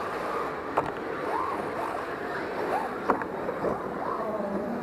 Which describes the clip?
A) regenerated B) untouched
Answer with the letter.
A